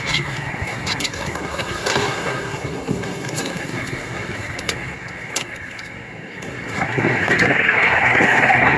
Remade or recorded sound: remade